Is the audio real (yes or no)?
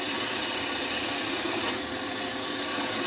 yes